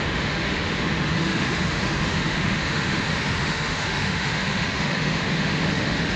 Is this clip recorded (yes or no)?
no